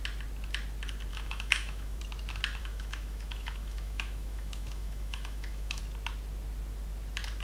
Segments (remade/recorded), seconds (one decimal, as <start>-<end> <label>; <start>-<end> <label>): 0.0-1.1 recorded; 1.1-2.0 remade; 2.0-2.6 recorded; 2.6-5.8 remade; 5.8-7.4 recorded